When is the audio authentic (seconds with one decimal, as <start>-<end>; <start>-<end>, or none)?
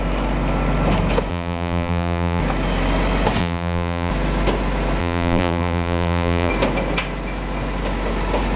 0.0-1.3; 2.4-3.4; 4.1-5.0; 6.5-8.6